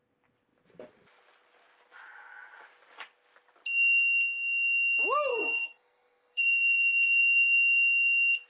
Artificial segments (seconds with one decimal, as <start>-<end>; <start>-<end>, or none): 5.3-7.2